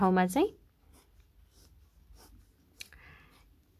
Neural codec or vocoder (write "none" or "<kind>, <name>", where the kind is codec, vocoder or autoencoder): none